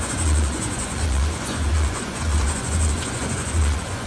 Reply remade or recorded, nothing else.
remade